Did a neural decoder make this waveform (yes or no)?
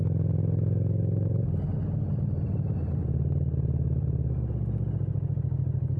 no